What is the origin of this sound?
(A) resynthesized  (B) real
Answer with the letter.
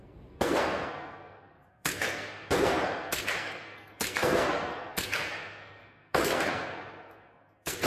A